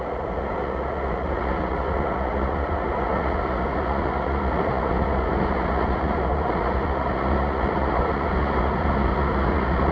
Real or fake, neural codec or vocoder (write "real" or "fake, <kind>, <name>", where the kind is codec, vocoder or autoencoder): fake, vocoder, Vocos